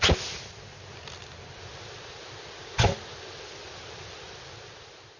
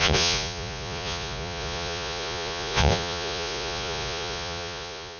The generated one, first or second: second